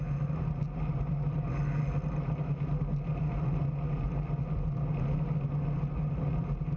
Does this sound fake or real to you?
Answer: real